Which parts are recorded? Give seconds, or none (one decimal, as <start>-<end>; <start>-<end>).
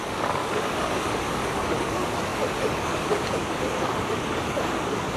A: none